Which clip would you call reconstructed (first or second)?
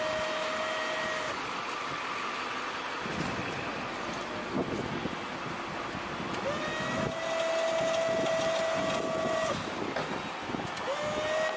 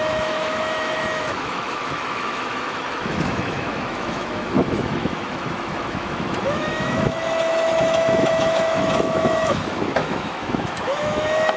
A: second